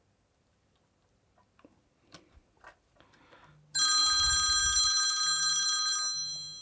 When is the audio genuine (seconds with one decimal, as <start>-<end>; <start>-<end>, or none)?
0.0-6.6